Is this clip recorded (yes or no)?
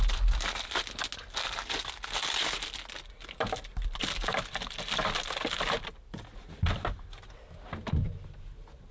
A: yes